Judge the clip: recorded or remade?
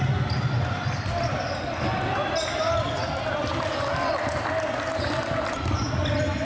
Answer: recorded